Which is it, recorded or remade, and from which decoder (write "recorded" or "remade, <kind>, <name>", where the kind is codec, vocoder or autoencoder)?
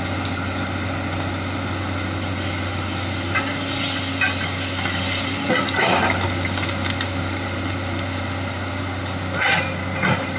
recorded